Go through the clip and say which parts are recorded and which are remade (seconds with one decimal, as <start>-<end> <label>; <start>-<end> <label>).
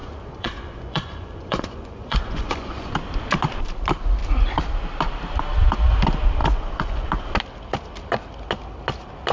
0.0-2.9 remade; 2.9-6.4 recorded; 6.4-7.1 remade; 7.1-9.3 recorded